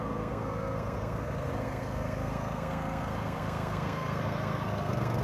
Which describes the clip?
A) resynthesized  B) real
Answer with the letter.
A